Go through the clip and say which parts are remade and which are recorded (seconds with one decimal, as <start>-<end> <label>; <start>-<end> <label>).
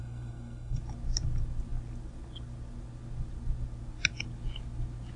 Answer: 0.0-0.8 remade; 0.8-5.2 recorded